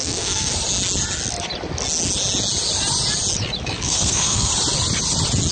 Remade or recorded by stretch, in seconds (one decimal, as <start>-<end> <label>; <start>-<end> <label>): 0.0-0.5 remade; 0.5-3.8 recorded; 3.8-4.5 remade; 4.5-5.5 recorded